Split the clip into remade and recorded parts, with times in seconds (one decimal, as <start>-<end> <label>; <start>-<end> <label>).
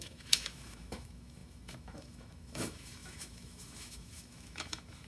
0.0-5.1 remade